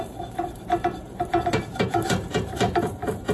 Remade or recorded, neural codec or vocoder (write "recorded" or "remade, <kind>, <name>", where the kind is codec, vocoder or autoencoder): remade, vocoder, BigVGAN v2